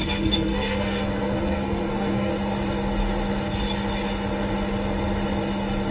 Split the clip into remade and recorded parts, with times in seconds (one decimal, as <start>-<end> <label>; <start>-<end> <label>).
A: 0.0-2.3 remade; 2.3-5.9 recorded